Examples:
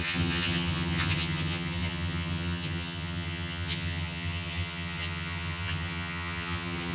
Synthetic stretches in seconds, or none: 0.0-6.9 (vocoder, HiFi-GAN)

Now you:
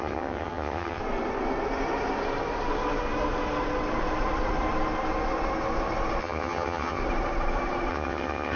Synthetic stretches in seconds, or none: 0.0-1.0 (vocoder, HiFi-GAN); 6.2-7.0; 7.9-8.6